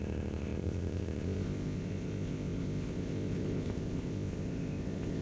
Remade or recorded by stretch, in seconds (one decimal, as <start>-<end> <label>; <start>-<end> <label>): 0.0-5.2 remade